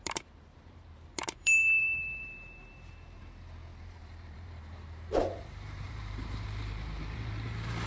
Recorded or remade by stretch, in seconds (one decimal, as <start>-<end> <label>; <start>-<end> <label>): 0.0-7.9 remade